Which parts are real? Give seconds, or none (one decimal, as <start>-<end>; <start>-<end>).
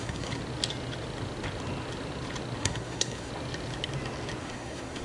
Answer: 0.4-2.6; 3.3-4.4